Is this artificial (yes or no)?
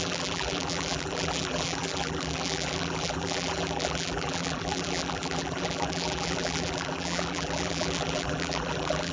yes